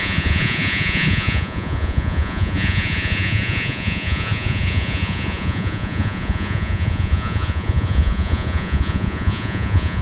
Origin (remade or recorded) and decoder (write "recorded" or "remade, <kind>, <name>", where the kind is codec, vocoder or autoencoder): remade, vocoder, Vocos